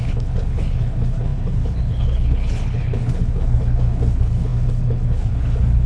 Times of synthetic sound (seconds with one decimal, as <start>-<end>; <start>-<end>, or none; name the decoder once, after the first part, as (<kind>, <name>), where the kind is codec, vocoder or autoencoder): 0.0-5.9 (codec, HILCodec)